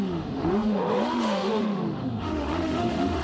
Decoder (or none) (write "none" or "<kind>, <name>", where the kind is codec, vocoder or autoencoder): autoencoder, DAC-VAE